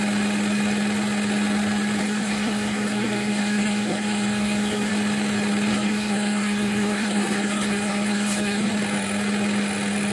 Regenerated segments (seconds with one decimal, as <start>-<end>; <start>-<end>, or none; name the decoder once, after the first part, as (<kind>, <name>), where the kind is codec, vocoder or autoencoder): 2.0-4.9 (codec, SNAC); 5.7-8.7